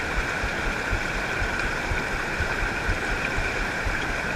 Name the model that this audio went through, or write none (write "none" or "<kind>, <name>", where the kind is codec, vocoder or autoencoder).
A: vocoder, BigVGAN v2